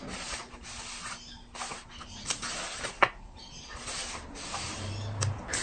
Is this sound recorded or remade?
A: recorded